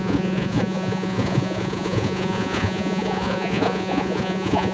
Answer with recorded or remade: remade